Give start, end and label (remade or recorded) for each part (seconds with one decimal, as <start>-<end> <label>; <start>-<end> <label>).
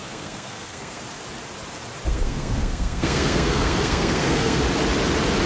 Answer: 0.0-1.0 remade; 1.0-2.1 recorded; 2.1-4.6 remade; 4.6-5.5 recorded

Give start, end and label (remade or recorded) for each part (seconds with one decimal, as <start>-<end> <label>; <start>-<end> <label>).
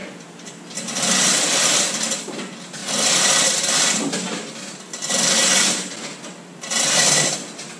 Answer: 0.0-7.8 recorded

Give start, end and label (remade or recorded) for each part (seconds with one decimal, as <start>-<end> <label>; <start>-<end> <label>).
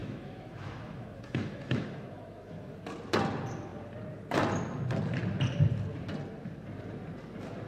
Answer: 0.0-2.8 remade; 2.8-7.7 recorded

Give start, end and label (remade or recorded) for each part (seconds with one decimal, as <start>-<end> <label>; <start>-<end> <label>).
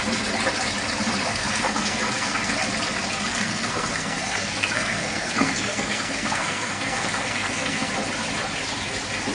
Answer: 0.0-1.3 recorded; 1.3-2.5 remade; 2.5-3.3 recorded; 3.3-7.9 remade; 7.9-9.3 recorded